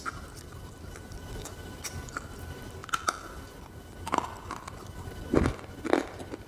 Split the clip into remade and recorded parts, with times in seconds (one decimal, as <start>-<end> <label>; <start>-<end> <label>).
0.0-6.5 recorded